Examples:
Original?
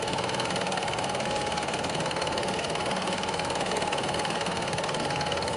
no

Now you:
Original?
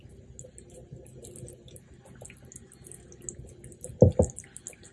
yes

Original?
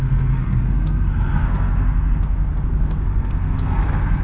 no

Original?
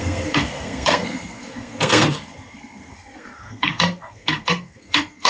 no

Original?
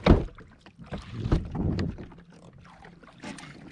yes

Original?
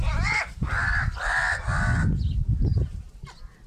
yes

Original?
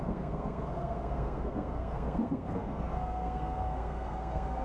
no